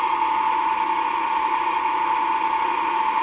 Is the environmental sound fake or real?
real